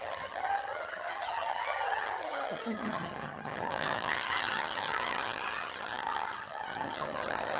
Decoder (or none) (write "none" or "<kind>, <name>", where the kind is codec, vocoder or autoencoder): vocoder, HiFi-GAN